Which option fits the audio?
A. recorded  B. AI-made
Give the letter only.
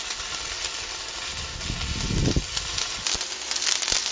A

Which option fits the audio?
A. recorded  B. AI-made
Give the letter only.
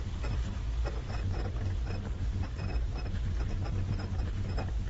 A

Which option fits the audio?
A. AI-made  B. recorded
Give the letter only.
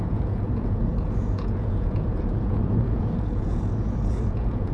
A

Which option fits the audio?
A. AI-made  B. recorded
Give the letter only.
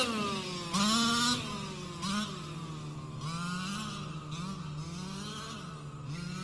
B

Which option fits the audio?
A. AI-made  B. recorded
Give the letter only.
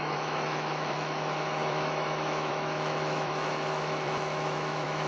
A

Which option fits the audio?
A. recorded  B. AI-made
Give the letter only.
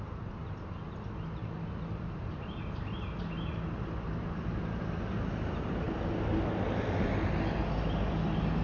A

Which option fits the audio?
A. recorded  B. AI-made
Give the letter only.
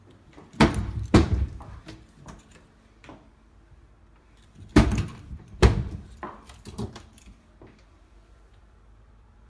B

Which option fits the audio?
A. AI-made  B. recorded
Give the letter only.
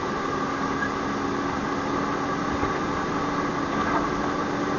B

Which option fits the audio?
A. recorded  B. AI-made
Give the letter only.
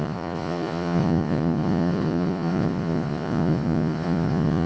B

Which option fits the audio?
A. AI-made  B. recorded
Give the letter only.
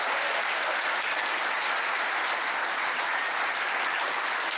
B